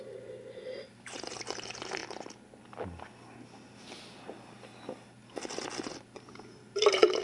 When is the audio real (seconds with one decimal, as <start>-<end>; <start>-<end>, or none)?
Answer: 2.0-6.3